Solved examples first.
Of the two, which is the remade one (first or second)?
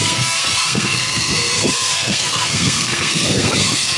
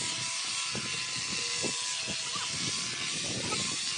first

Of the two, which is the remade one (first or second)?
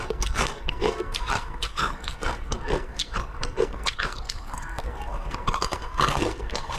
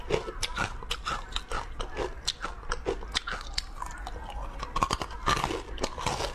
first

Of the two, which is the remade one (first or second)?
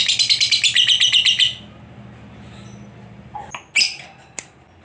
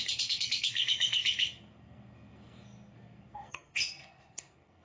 second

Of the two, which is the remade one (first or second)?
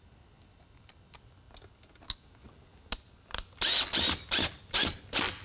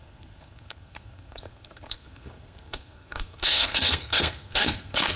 second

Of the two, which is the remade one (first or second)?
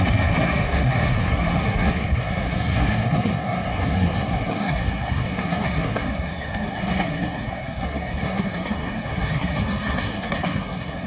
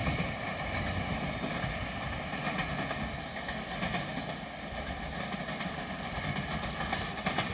first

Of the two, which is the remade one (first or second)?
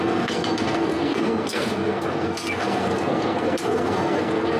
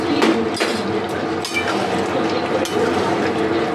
first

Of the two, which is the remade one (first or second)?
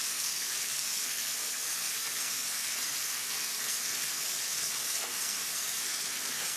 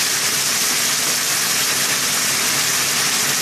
first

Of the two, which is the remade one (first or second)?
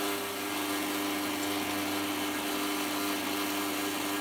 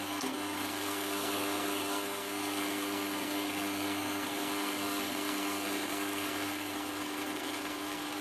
second